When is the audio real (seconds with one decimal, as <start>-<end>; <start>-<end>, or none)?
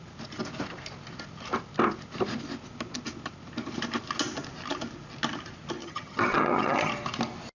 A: 0.0-5.8; 6.9-7.6